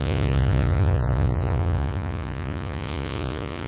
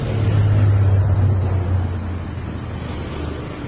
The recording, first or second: second